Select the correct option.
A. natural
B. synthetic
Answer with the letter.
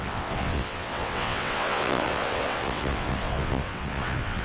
B